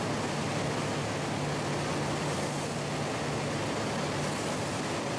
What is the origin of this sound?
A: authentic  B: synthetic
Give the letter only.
A